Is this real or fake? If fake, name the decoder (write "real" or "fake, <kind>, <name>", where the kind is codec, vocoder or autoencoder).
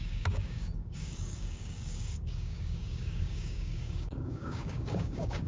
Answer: fake, codec, DAC